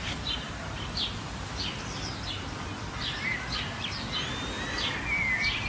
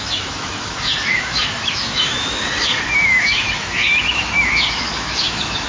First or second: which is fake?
second